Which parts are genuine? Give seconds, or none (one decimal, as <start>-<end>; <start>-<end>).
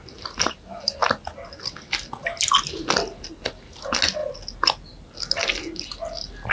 0.0-6.5